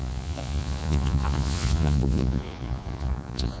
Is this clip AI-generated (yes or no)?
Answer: yes